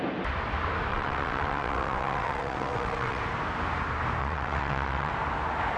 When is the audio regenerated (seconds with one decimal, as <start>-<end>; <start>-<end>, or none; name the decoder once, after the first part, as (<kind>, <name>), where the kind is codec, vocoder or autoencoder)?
0.9-3.2 (vocoder, WaveNeXt); 4.2-5.1